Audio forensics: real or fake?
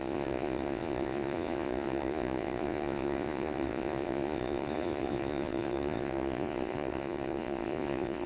fake